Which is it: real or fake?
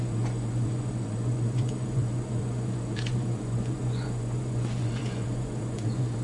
fake